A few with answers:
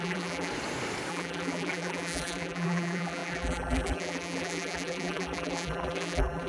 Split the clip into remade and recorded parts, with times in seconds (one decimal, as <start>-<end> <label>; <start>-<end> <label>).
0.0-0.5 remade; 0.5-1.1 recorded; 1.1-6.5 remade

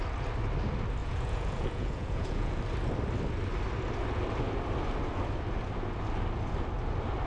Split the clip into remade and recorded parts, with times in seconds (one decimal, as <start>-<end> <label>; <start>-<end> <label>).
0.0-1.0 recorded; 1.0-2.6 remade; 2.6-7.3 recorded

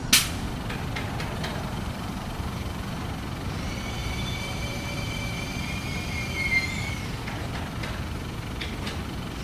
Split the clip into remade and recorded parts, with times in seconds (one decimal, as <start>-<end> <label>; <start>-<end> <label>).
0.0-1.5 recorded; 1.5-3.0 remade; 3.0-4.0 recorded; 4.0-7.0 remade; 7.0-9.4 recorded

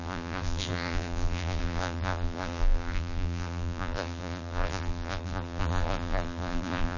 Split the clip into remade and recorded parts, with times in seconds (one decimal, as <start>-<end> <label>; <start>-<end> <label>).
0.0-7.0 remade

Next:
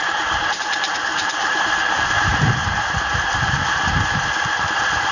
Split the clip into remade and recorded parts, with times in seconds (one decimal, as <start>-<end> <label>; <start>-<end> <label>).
0.0-5.1 remade

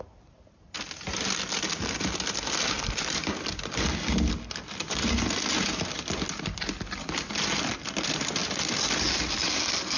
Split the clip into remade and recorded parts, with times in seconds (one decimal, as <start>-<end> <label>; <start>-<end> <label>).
0.0-10.0 recorded